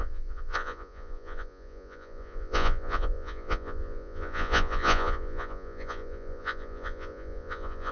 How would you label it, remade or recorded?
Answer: remade